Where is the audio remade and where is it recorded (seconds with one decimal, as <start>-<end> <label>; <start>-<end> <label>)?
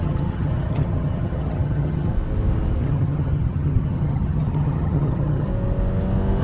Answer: 0.0-2.1 remade; 2.1-2.8 recorded; 2.8-5.5 remade; 5.5-6.4 recorded